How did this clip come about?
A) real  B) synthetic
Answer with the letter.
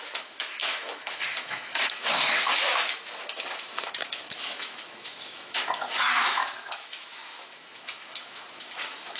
B